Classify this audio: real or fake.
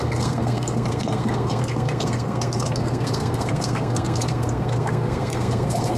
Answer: fake